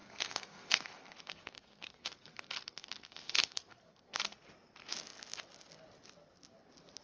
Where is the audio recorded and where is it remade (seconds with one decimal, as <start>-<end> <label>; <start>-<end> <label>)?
0.0-4.2 remade; 4.2-7.0 recorded